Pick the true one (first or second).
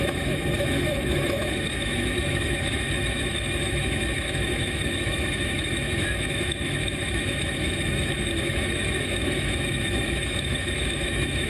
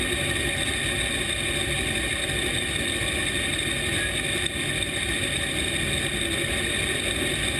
second